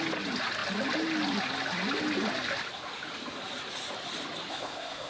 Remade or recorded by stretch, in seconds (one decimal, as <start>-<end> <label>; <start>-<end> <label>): 0.0-4.5 recorded; 4.5-5.1 remade